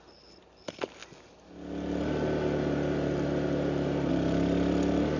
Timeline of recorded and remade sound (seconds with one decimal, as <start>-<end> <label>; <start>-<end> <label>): 0.0-5.2 recorded